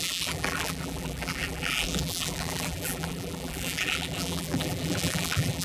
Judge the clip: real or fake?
fake